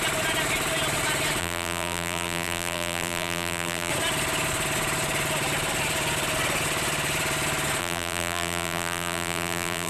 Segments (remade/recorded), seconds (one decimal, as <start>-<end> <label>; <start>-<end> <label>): 0.0-1.4 recorded; 1.4-3.9 remade; 3.9-7.8 recorded; 7.8-9.9 remade